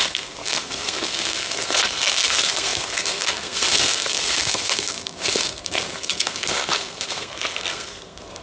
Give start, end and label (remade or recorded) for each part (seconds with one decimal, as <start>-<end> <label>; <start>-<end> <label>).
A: 0.0-8.4 remade